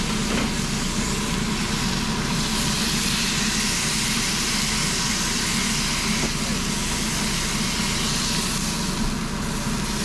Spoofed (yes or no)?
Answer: no